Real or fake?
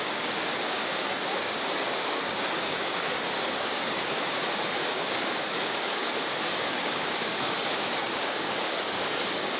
fake